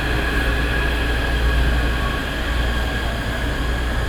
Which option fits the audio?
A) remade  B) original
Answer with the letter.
B